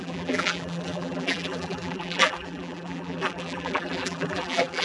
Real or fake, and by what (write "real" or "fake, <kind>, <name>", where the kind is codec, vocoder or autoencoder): fake, vocoder, BigVGAN v2